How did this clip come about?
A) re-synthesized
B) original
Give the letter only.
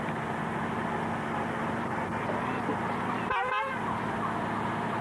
B